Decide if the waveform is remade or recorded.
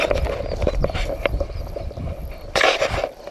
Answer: remade